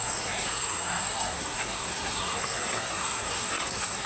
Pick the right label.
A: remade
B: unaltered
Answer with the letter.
A